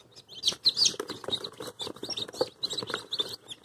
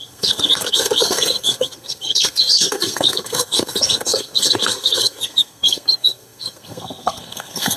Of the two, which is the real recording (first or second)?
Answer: first